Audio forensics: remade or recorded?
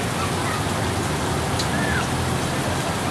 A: recorded